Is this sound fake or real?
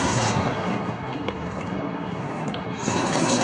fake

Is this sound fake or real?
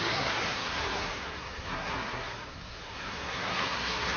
fake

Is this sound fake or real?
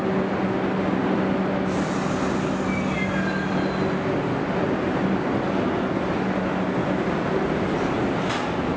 real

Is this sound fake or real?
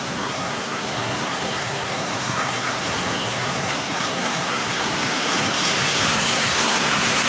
fake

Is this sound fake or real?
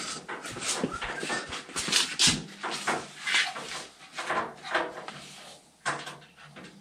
real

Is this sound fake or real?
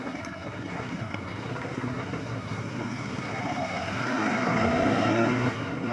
fake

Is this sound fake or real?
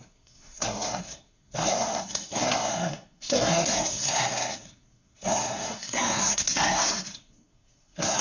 fake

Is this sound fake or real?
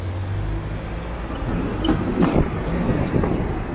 real